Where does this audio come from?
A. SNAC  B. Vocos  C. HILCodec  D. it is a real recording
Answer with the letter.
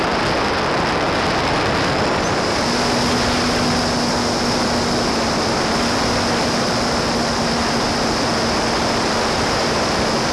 D